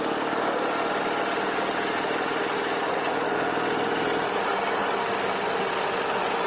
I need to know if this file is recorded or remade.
recorded